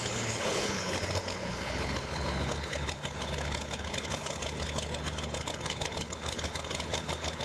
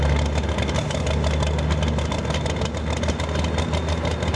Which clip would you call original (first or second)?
second